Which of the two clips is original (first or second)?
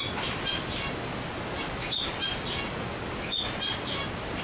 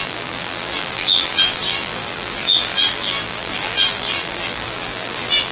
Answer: first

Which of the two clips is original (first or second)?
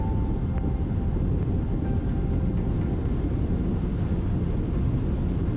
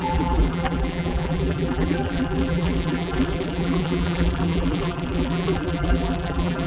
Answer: first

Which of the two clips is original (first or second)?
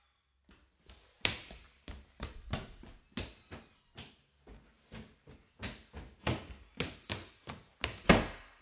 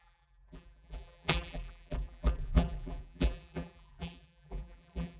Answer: first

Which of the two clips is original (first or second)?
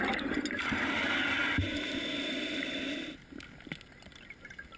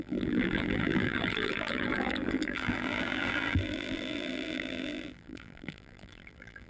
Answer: first